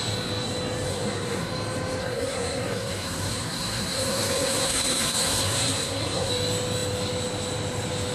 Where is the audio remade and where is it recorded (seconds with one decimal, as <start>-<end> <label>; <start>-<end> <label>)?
0.0-0.9 recorded; 0.9-1.5 remade; 1.5-2.0 recorded; 2.0-6.3 remade; 6.3-8.1 recorded

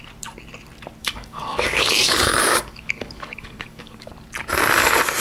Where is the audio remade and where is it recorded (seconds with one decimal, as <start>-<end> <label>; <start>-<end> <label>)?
0.0-1.0 recorded; 1.0-4.1 remade; 4.1-5.2 recorded

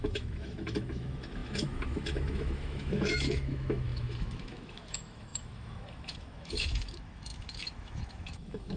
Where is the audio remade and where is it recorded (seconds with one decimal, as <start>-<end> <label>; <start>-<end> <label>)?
0.0-8.8 remade